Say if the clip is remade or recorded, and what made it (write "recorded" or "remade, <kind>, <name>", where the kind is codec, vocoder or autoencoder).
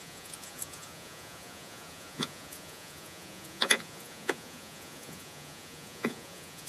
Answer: remade, vocoder, Vocos